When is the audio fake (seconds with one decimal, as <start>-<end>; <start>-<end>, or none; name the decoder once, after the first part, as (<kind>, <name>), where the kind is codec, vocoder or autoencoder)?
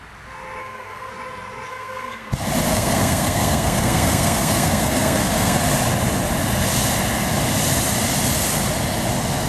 0.6-1.1 (codec, SNAC); 1.7-2.3; 2.7-5.6